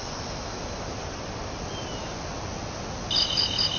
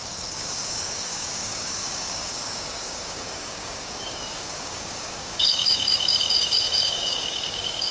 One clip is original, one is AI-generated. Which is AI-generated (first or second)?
second